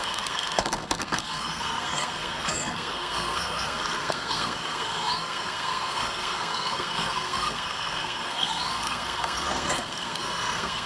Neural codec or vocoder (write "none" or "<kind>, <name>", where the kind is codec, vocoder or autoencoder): codec, SNAC